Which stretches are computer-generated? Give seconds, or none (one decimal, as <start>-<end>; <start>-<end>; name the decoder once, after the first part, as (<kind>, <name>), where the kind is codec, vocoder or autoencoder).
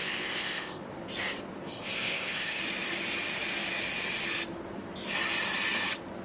0.0-0.8 (codec, ZipCodec); 1.7-2.6